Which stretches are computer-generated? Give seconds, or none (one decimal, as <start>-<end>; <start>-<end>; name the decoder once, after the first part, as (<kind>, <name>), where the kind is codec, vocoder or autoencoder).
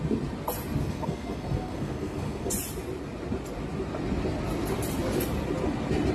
0.8-2.5 (codec, SNAC)